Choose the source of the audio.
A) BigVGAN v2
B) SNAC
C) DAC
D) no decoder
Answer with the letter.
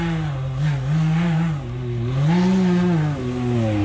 D